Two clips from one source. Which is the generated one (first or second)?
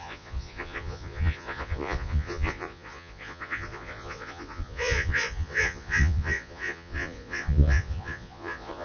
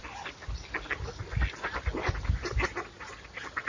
first